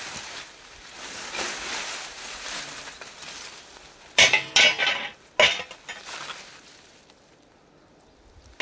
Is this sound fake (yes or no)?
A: no